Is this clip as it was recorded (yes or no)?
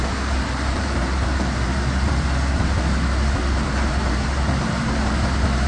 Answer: no